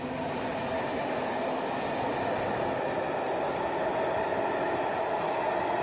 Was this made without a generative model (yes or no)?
yes